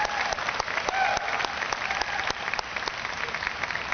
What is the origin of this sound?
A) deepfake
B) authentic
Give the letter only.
B